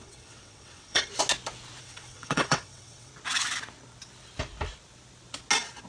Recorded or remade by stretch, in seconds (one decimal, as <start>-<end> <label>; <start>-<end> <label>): 0.0-1.1 remade; 1.1-1.8 recorded; 1.8-3.1 remade; 3.1-5.9 recorded